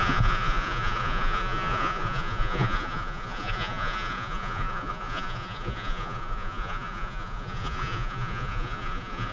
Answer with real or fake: fake